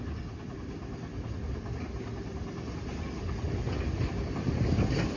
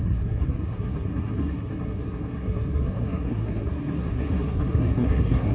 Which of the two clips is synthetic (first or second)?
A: second